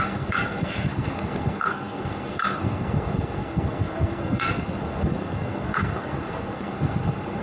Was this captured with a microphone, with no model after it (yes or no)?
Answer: no